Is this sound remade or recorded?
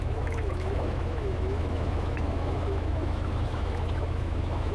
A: remade